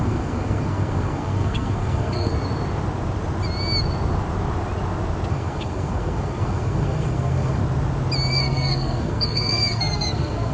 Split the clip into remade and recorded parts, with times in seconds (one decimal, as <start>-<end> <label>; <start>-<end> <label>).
0.0-2.3 remade; 2.3-5.3 recorded; 5.3-7.6 remade; 7.6-8.3 recorded; 8.3-10.5 remade